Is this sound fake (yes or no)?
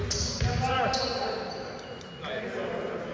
no